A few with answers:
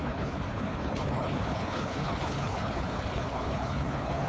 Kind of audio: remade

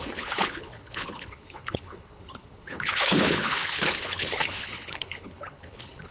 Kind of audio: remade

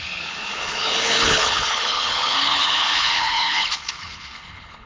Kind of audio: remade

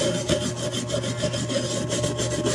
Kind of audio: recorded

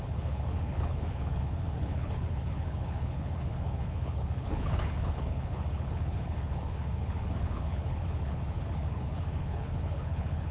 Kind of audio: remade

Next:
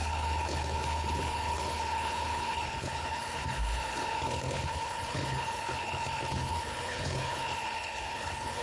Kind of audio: remade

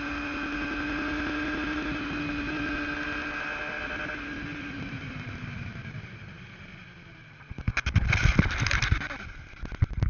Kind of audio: recorded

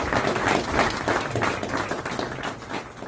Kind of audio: recorded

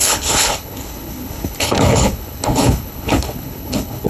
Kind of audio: remade